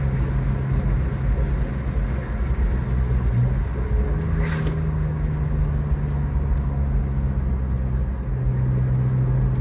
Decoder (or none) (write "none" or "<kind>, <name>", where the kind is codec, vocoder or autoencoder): none